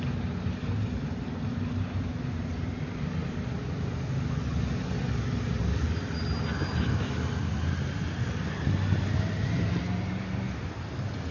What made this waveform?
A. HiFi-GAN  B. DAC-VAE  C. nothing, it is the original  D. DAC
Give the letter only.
C